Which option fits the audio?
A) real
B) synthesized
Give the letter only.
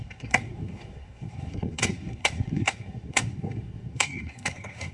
B